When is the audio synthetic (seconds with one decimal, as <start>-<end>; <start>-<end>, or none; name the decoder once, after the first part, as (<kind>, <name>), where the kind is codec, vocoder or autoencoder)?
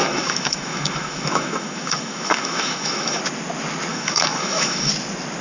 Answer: 0.0-3.2 (autoencoder, DAC-VAE); 3.9-4.9